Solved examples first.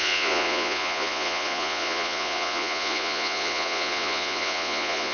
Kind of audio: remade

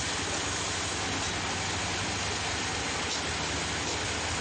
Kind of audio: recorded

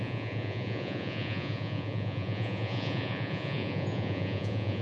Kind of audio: remade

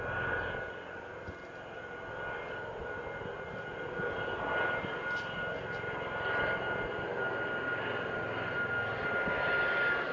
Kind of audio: recorded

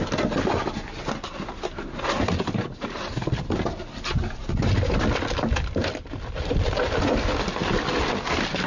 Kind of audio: recorded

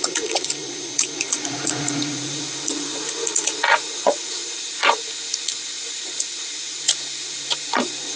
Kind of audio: remade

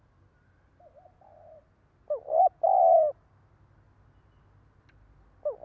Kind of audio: recorded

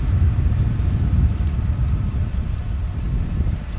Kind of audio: recorded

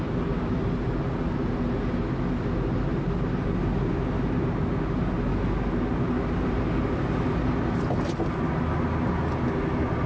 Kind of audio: recorded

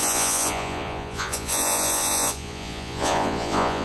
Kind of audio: remade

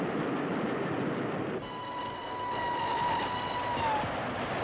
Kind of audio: recorded